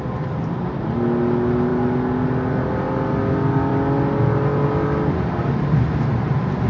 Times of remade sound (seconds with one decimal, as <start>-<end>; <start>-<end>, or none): none